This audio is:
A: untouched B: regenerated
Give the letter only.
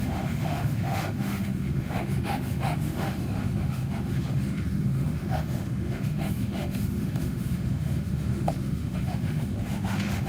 B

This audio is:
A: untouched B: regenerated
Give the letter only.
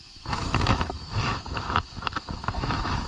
B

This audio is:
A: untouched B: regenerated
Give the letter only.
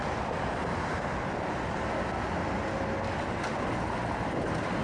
A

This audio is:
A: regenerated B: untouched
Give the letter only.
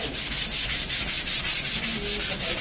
B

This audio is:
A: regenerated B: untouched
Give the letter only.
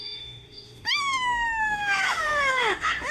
A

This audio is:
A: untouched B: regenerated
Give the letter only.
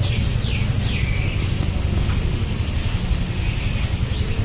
A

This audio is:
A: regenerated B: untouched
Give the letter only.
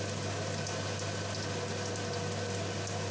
B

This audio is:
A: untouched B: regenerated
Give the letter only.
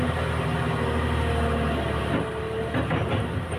A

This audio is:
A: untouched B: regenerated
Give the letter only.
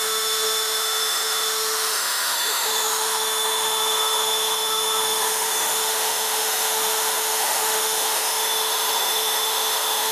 B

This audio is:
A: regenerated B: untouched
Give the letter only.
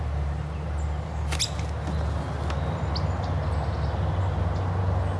B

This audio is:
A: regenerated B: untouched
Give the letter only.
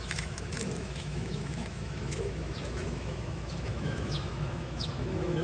A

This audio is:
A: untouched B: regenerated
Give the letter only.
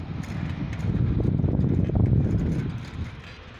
A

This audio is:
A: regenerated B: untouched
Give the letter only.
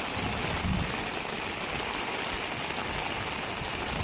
B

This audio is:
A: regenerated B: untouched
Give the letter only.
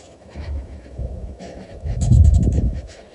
A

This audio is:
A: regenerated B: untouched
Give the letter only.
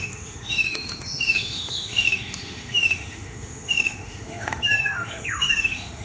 A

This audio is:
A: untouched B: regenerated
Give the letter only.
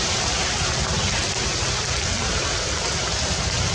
A